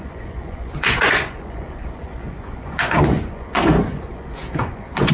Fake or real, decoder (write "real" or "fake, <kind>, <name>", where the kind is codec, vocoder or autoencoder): fake, vocoder, Vocos